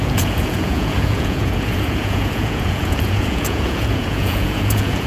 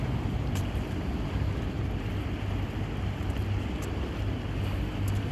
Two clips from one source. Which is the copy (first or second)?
first